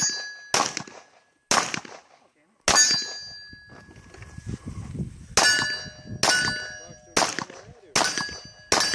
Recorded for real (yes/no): yes